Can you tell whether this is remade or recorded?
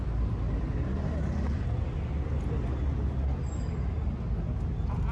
recorded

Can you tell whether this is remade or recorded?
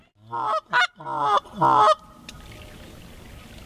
recorded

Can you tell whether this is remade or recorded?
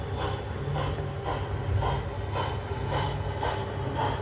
recorded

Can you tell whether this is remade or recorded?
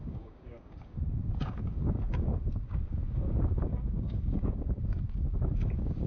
remade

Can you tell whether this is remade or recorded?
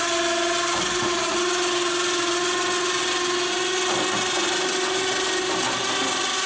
recorded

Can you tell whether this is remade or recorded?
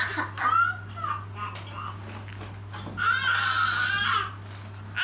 recorded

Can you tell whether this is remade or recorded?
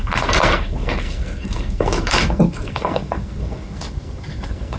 remade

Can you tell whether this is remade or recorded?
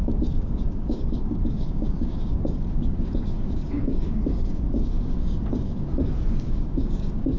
remade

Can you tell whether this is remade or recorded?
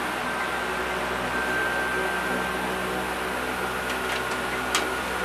recorded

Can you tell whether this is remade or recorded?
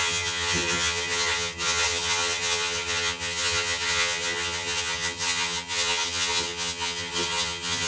remade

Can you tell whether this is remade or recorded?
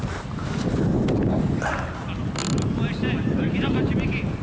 recorded